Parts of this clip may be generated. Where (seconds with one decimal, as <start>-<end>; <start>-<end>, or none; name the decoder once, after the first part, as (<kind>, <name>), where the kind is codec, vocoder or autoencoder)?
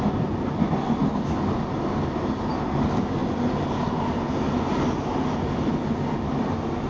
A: none